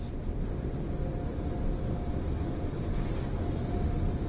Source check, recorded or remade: recorded